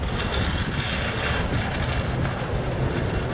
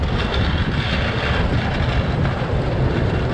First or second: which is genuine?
first